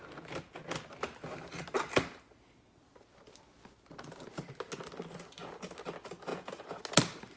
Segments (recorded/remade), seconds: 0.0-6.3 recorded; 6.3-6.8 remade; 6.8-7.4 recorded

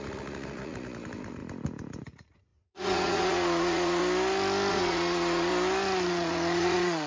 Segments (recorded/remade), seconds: 0.0-1.4 remade; 1.4-2.0 recorded; 2.0-4.0 remade; 4.0-4.7 recorded; 4.7-5.5 remade; 5.5-6.1 recorded; 6.1-7.1 remade